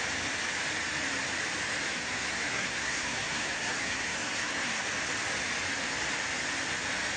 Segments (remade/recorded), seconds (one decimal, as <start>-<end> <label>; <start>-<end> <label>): 0.0-1.9 recorded; 1.9-4.8 remade; 4.8-7.2 recorded